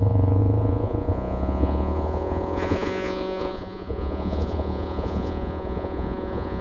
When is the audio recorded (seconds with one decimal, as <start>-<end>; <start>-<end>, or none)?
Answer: none